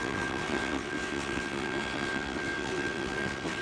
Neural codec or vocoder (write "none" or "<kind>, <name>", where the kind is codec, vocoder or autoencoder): vocoder, WaveNeXt